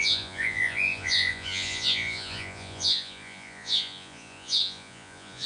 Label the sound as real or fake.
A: fake